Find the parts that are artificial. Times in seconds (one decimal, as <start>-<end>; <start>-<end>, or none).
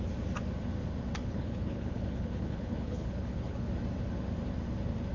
1.2-3.7